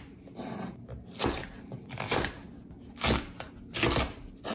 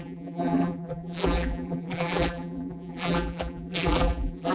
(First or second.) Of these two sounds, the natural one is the first